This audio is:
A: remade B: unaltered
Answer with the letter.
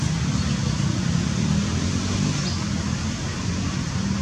B